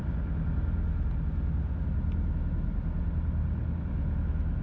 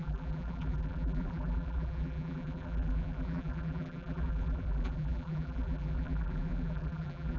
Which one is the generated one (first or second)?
second